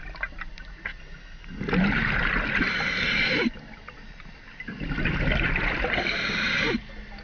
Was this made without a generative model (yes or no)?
yes